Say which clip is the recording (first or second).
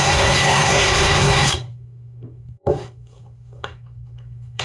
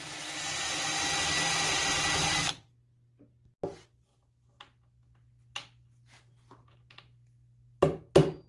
second